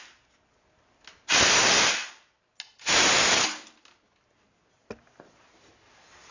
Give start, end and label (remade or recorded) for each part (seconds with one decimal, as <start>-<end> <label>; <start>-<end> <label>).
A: 0.0-6.3 recorded